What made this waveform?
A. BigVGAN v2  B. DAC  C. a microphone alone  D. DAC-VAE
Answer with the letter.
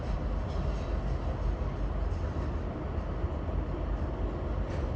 C